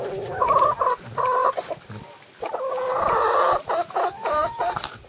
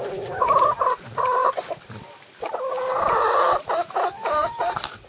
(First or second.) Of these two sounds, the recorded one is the first